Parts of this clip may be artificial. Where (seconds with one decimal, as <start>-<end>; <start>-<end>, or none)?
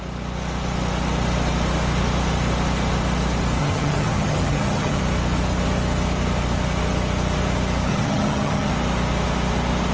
3.6-5.0; 7.9-8.7